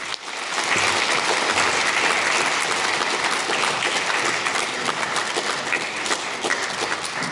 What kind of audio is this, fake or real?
real